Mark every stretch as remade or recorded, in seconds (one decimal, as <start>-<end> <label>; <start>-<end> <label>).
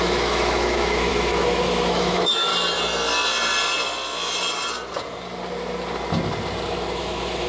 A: 0.0-2.5 remade; 2.5-7.0 recorded; 7.0-7.5 remade